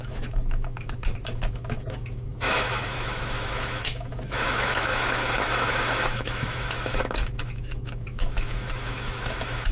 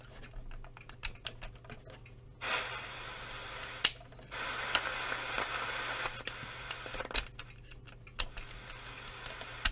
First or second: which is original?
second